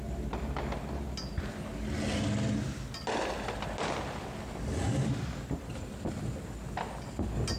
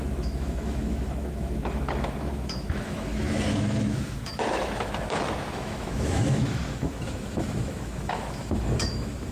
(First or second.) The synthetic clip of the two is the second